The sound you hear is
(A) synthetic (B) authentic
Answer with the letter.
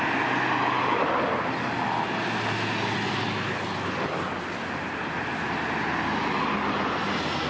B